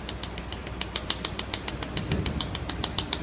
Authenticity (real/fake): real